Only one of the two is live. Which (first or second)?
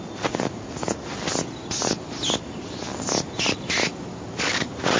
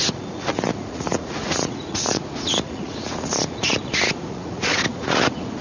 first